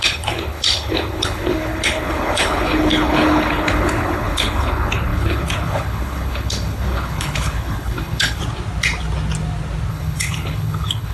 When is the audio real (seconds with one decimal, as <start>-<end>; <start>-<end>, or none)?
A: 8.4-9.9